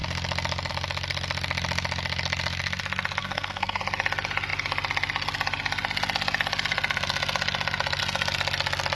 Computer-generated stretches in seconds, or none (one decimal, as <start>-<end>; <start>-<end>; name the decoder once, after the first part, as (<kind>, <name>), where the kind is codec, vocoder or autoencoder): 3.2-3.8 (codec, SNAC)